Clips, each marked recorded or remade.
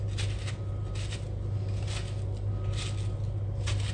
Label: recorded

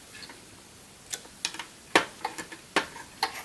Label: recorded